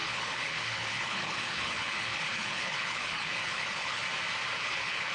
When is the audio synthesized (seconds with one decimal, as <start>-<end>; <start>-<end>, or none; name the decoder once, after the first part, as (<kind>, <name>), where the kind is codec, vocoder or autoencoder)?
0.0-4.0 (codec, HILCodec); 4.6-5.1